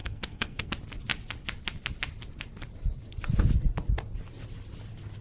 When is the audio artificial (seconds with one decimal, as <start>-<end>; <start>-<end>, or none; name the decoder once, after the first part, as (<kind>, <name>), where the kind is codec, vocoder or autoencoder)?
0.0-0.7 (codec, SNAC)